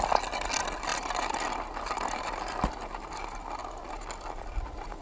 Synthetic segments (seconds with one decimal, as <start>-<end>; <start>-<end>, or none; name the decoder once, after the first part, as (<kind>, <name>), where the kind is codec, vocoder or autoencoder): 0.9-3.9 (vocoder, BigVGAN v2)